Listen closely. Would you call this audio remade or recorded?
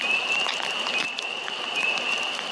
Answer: recorded